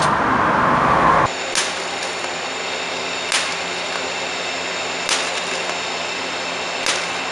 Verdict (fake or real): real